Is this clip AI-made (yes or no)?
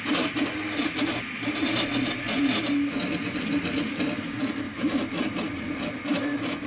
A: no